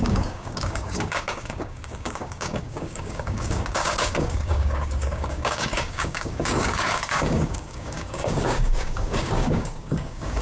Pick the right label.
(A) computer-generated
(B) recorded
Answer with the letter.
A